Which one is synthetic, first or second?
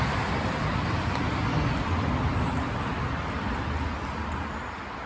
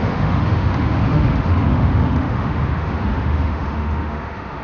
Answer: second